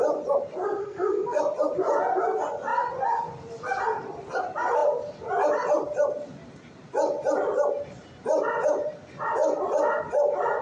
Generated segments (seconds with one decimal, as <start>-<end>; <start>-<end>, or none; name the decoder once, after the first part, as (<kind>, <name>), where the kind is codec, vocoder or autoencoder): 0.8-1.4 (codec, SNAC)

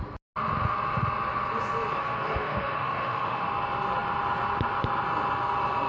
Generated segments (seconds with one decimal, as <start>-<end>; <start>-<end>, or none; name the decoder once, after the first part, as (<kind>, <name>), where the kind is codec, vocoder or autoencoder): 1.9-3.5 (autoencoder, DAC-VAE)

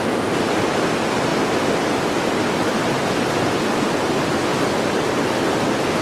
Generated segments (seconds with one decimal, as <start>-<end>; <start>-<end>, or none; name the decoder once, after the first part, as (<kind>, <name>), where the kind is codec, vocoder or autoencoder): none

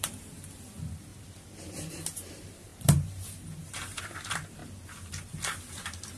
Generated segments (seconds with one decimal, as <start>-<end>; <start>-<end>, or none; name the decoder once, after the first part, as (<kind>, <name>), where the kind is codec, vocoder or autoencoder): 0.0-1.1 (vocoder, BigVGAN v2); 1.9-4.6; 5.7-6.2

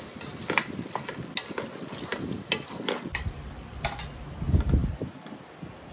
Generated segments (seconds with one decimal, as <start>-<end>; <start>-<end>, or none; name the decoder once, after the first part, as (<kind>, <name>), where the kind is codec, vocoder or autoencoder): 0.0-4.8 (vocoder, BigVGAN v2)

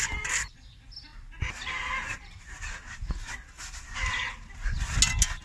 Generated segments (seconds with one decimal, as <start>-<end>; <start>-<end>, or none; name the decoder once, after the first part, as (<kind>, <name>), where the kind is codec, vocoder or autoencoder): none